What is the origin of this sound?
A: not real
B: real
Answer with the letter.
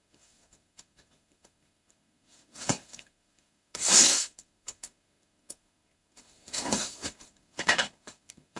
A